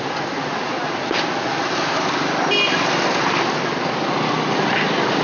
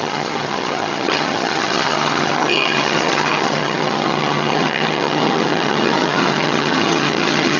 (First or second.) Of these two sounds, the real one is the first